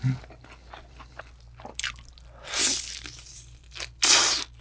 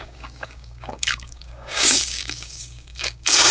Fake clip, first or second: second